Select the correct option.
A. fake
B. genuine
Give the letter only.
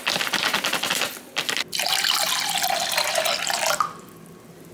B